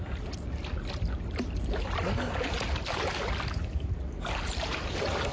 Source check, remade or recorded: recorded